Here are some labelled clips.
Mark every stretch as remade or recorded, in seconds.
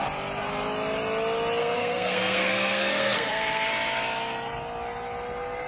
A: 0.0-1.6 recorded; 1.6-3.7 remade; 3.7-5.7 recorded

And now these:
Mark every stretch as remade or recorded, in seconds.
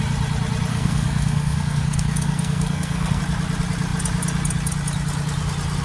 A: 0.0-0.7 recorded; 0.7-3.2 remade; 3.2-5.8 recorded